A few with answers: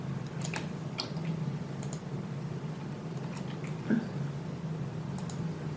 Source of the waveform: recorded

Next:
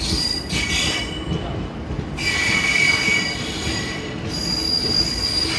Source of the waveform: recorded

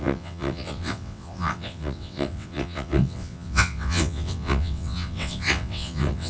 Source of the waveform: remade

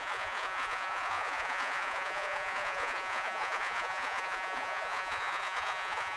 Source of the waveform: remade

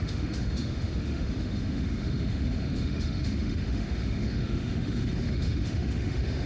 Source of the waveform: remade